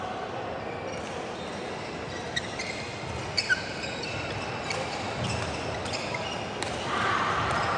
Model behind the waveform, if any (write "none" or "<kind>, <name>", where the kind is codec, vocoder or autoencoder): none